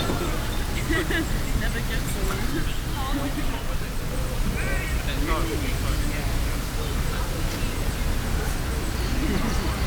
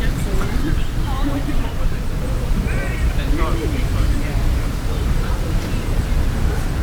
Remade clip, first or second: second